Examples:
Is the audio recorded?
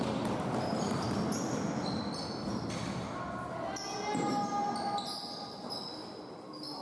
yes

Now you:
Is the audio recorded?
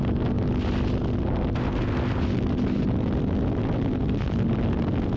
yes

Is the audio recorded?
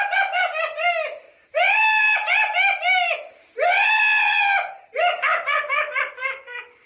yes